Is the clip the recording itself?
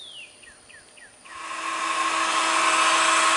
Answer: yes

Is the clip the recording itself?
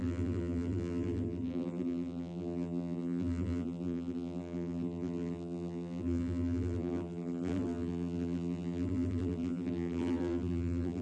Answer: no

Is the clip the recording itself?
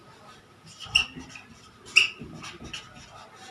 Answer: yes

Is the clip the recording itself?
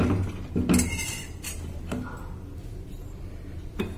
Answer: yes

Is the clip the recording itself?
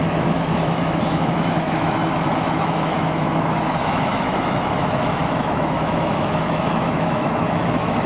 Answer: no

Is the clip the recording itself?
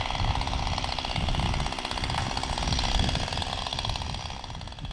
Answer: yes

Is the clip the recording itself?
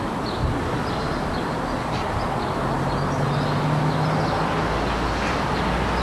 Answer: yes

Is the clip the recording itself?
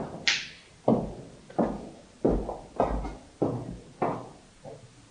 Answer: yes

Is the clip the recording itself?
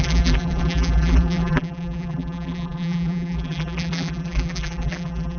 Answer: no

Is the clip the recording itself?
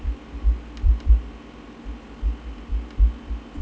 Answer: yes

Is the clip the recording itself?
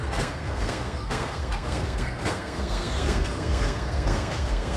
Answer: no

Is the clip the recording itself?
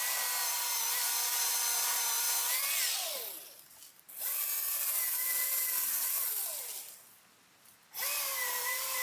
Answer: yes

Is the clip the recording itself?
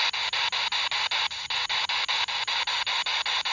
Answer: yes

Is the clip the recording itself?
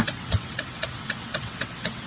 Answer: no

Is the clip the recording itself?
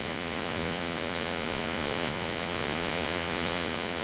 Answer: no